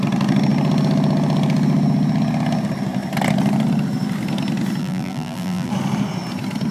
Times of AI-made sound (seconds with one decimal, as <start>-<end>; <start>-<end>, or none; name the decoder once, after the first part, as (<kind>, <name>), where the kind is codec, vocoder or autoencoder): 4.8-5.7 (vocoder, BigVGAN v2)